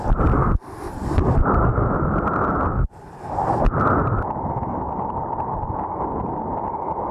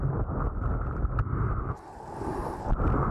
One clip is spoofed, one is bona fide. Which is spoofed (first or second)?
first